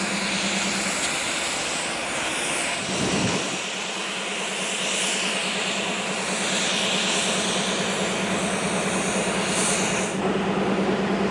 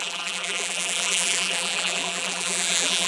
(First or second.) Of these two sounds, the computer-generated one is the second